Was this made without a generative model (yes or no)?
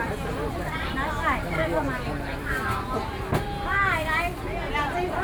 yes